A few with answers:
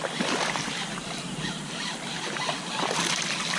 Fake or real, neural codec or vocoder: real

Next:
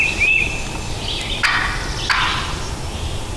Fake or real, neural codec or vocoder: real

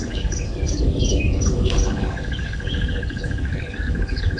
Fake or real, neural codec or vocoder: fake, codec, DAC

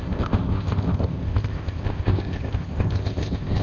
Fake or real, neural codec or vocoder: fake, codec, ZipCodec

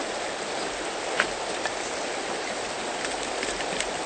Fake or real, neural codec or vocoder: real